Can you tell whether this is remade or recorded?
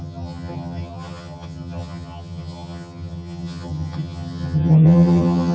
remade